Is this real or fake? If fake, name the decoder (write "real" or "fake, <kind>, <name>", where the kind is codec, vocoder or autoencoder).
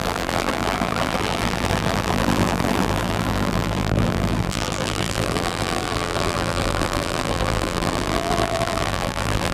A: fake, vocoder, BigVGAN v2